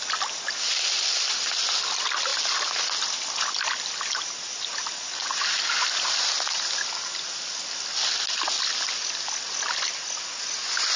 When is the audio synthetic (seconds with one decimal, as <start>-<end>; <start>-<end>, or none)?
none